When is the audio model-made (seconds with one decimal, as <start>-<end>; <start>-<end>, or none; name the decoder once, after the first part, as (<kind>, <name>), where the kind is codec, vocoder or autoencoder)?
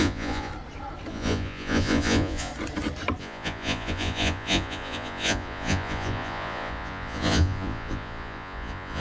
0.0-0.5 (vocoder, Vocos); 1.1-2.5; 3.2-9.0